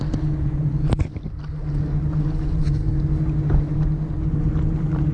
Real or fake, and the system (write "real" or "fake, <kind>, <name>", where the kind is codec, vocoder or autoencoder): real